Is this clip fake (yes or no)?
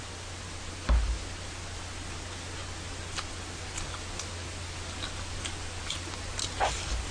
no